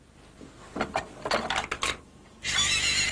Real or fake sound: real